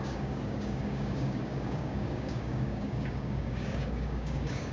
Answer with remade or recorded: remade